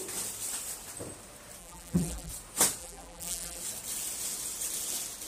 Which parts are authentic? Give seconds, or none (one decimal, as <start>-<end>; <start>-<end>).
0.0-1.6; 2.3-2.8; 3.6-5.3